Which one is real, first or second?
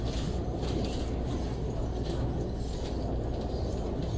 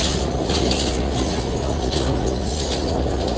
first